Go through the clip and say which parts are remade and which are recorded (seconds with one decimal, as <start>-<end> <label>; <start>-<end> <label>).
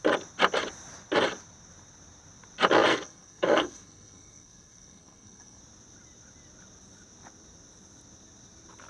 0.0-2.9 recorded; 2.9-5.6 remade; 5.6-8.9 recorded